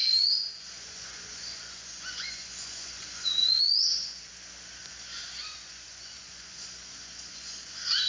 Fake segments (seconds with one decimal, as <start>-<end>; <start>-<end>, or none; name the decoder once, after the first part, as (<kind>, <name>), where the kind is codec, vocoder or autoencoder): 0.0-4.3 (vocoder, Vocos); 4.8-8.1

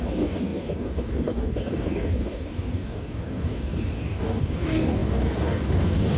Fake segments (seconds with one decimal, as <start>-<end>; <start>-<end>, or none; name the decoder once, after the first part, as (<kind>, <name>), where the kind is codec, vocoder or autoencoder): 0.0-6.2 (codec, DAC)

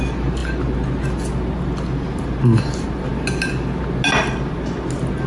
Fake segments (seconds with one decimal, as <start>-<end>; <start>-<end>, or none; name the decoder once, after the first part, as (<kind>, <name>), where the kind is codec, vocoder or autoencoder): none